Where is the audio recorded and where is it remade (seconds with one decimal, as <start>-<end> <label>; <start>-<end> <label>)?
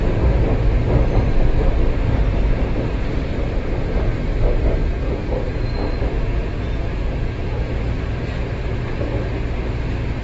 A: 0.0-4.8 recorded; 4.8-7.7 remade; 7.7-10.2 recorded